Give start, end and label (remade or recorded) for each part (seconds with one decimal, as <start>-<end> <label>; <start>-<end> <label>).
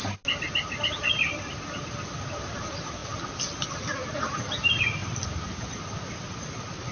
0.0-6.9 recorded